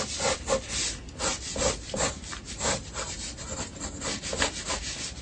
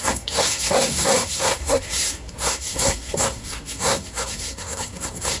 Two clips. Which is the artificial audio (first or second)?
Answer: second